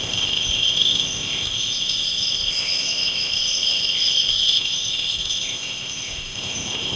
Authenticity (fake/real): fake